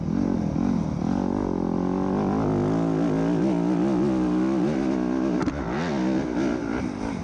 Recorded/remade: recorded